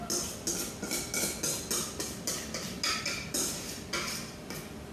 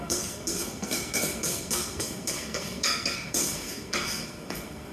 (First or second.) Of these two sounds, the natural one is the first